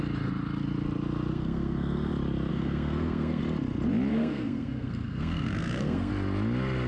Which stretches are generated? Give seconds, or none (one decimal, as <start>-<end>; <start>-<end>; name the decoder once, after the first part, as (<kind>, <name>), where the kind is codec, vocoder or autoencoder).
1.3-2.1 (codec, SNAC); 2.5-3.4; 4.1-6.1

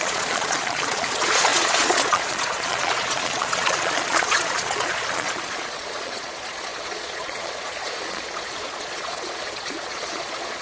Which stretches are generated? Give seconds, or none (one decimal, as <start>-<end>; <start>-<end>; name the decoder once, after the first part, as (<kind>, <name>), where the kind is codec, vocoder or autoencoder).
0.0-10.6 (vocoder, Vocos)

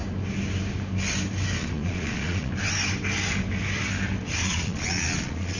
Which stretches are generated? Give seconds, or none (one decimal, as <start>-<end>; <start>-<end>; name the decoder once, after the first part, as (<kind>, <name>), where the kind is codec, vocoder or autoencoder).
1.6-2.5 (vocoder, Vocos); 4.4-5.6